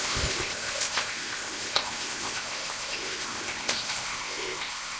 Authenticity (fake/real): fake